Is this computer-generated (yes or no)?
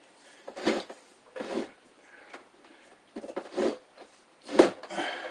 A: yes